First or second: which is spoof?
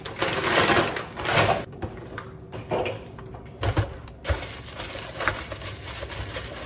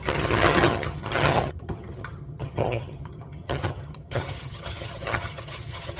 second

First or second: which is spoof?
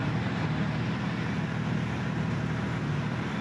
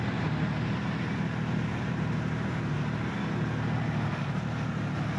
first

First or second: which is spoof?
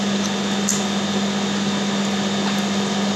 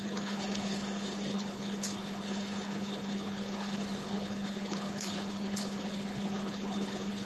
second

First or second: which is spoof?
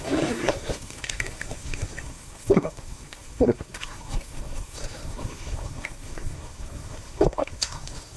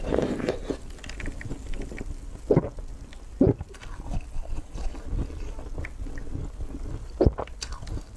first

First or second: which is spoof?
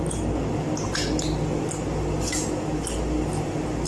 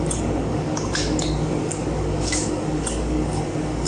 second